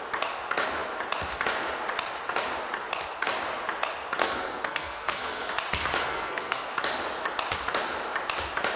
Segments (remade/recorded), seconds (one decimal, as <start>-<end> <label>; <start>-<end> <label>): 0.0-4.2 recorded; 4.2-5.5 remade; 5.5-6.0 recorded; 6.0-6.7 remade; 6.7-8.8 recorded